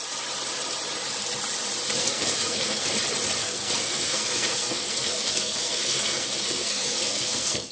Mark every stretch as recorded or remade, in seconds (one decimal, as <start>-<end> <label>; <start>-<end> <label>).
0.0-2.0 recorded; 2.0-2.9 remade; 2.9-3.4 recorded; 3.4-7.7 remade

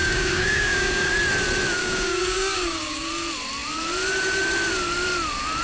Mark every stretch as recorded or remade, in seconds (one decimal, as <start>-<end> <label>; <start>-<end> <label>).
0.0-1.1 remade; 1.1-1.8 recorded; 1.8-3.1 remade; 3.1-5.6 recorded

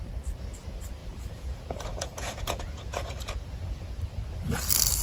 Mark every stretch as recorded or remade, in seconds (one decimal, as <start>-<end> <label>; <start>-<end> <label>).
0.0-1.0 recorded; 1.0-4.0 remade; 4.0-5.0 recorded

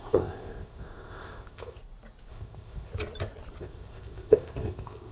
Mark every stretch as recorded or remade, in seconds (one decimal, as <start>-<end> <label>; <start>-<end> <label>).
0.0-1.8 remade; 1.8-2.3 recorded; 2.3-2.9 remade; 2.9-3.6 recorded; 3.6-5.1 remade

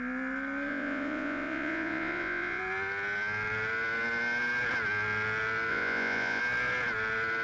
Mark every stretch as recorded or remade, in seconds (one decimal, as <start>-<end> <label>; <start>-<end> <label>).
0.0-0.7 recorded; 0.7-2.6 remade; 2.6-5.7 recorded; 5.7-6.4 remade; 6.4-7.4 recorded

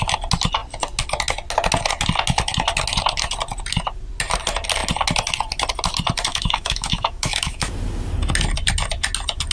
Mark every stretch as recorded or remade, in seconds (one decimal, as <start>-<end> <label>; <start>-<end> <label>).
0.0-6.3 recorded; 6.3-7.7 remade; 7.7-9.5 recorded

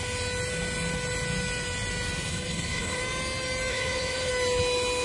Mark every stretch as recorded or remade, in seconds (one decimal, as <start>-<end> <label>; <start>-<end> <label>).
0.0-2.3 recorded; 2.3-3.0 remade; 3.0-3.7 recorded; 3.7-4.3 remade; 4.3-5.0 recorded

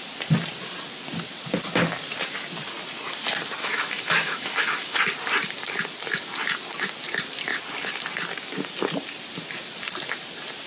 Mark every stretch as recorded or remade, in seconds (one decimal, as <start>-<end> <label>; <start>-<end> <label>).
0.0-3.6 recorded; 3.6-5.0 remade; 5.0-10.7 recorded